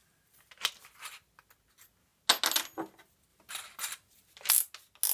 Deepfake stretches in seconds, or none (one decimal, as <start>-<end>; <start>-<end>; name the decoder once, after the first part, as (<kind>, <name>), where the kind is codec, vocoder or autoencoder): 0.0-0.7 (vocoder, BigVGAN v2); 3.3-4.5